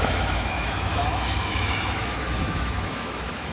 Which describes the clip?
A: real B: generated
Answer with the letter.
B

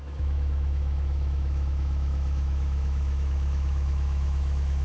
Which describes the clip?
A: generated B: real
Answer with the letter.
A